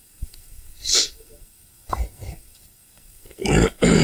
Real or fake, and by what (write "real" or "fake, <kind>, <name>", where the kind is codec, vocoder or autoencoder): fake, codec, SNAC